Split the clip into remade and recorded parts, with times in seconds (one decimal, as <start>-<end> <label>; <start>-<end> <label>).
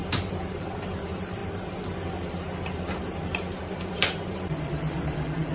0.0-5.5 remade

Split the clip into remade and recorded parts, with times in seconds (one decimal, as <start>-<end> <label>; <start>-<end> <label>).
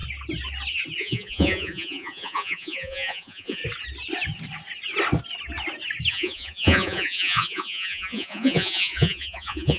0.0-1.0 recorded; 1.0-3.6 remade; 3.6-6.1 recorded; 6.1-9.8 remade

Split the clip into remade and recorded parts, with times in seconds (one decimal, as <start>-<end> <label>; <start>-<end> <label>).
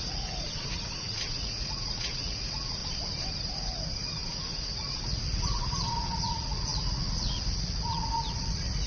0.0-2.8 remade; 2.8-3.3 recorded; 3.3-8.9 remade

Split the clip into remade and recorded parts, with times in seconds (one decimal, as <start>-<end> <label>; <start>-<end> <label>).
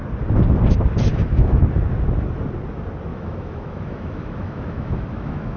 0.0-1.1 recorded; 1.1-1.6 remade; 1.6-3.1 recorded; 3.1-5.6 remade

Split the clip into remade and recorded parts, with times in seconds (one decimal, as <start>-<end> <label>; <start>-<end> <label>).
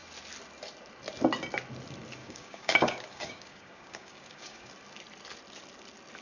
0.0-2.2 recorded; 2.2-4.7 remade; 4.7-6.2 recorded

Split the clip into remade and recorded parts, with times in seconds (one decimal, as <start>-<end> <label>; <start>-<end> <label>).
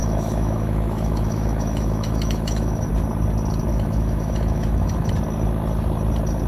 0.0-2.9 remade; 2.9-3.7 recorded; 3.7-5.1 remade; 5.1-6.5 recorded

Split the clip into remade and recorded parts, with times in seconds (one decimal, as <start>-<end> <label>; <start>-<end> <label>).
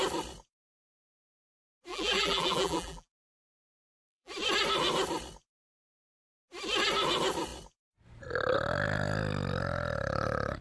0.0-1.9 recorded; 1.9-4.3 remade; 4.3-10.6 recorded